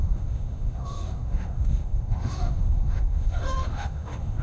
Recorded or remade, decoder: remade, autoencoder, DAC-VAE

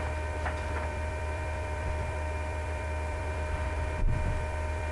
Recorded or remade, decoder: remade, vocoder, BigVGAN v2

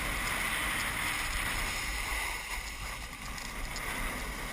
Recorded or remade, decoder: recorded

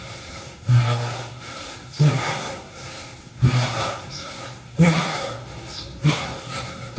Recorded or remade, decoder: remade, codec, SNAC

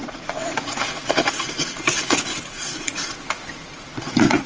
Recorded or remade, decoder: remade, vocoder, Vocos